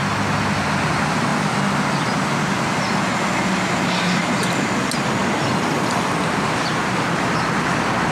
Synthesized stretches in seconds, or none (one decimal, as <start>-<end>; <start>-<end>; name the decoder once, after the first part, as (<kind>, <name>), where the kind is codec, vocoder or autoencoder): none